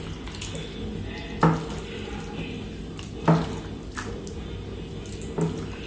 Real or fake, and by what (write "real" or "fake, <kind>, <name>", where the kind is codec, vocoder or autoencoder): real